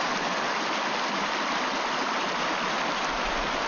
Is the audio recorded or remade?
recorded